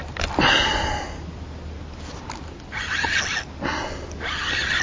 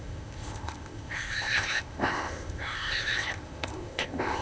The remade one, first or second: second